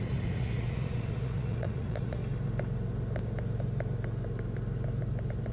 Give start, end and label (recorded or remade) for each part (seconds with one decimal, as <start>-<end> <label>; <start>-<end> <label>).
0.0-2.2 remade; 2.2-5.5 recorded